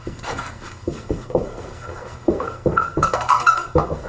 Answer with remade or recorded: remade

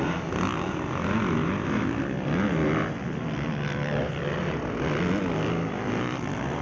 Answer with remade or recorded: recorded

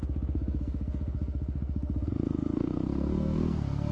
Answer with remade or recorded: remade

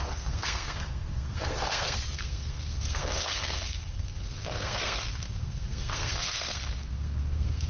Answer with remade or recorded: remade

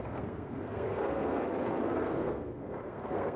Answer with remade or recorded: remade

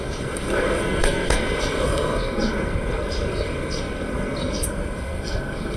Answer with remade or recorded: remade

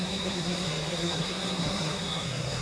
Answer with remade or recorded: remade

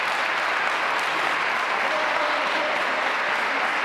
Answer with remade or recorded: recorded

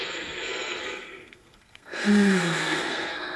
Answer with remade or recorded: remade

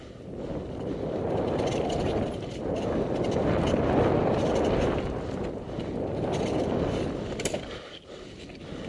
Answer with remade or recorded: recorded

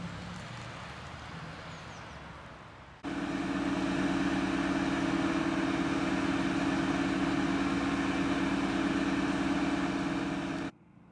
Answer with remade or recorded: recorded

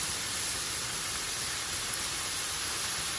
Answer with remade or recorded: recorded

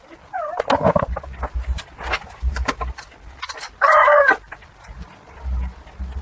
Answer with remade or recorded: recorded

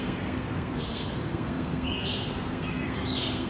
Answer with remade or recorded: remade